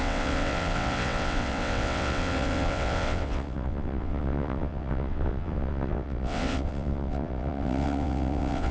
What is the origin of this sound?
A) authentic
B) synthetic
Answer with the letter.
B